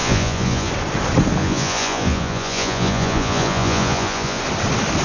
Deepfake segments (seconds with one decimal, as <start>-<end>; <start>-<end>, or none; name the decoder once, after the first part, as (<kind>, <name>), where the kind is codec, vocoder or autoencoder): 0.0-0.7 (vocoder, Vocos); 1.4-4.4